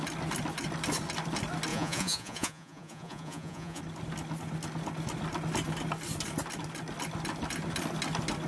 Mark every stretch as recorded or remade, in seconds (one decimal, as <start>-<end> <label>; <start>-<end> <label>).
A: 0.0-1.7 recorded; 1.7-3.8 remade; 3.8-8.5 recorded